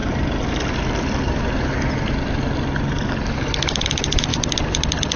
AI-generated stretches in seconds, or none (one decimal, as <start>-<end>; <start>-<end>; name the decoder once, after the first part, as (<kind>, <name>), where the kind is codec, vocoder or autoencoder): none